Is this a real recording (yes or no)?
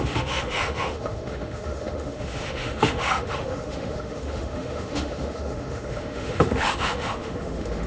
no